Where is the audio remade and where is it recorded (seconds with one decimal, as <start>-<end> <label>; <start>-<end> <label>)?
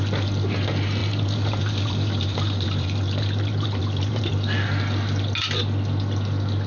0.0-1.0 recorded; 1.0-4.2 remade; 4.2-6.7 recorded